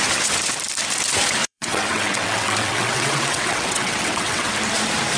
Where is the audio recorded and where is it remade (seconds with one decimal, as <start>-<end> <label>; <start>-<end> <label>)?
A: 0.0-1.4 recorded; 1.4-4.5 remade; 4.5-5.2 recorded